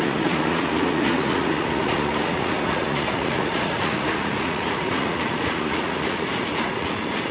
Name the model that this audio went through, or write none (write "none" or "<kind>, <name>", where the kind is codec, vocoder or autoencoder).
vocoder, Vocos